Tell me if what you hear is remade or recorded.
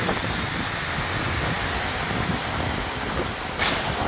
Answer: recorded